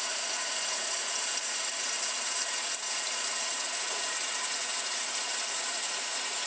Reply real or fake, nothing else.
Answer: fake